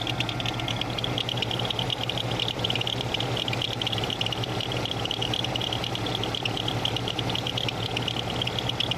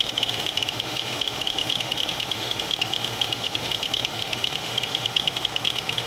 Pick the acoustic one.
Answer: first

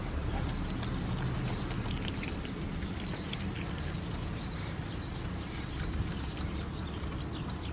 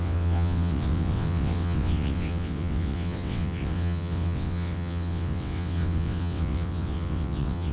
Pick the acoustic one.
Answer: first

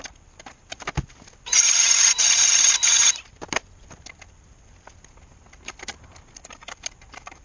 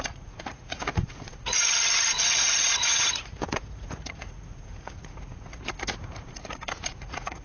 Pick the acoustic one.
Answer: first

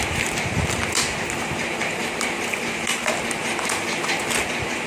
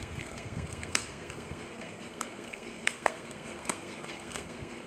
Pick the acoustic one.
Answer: first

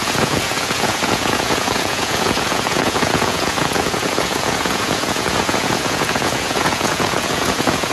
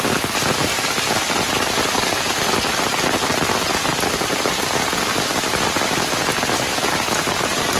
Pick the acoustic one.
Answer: second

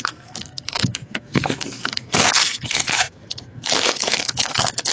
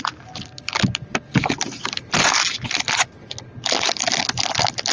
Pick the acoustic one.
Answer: second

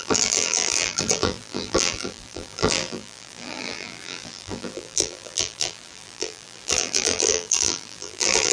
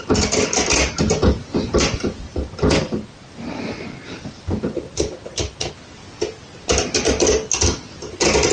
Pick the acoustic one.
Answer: second